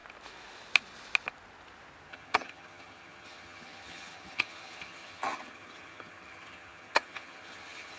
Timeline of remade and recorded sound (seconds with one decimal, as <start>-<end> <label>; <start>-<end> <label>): 0.0-2.1 recorded; 2.1-8.0 remade